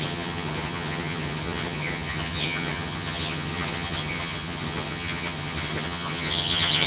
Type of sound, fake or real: fake